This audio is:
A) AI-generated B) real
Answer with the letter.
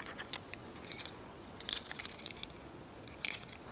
A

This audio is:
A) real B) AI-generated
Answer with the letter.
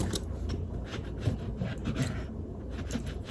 B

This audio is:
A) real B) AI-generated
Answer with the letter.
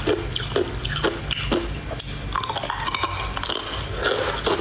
A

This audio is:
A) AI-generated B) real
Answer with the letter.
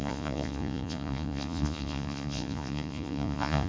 A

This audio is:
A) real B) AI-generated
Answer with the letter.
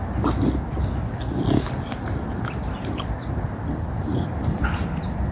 B